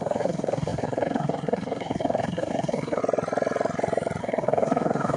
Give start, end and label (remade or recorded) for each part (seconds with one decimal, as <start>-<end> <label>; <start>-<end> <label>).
0.0-3.0 remade; 3.0-4.2 recorded; 4.2-5.2 remade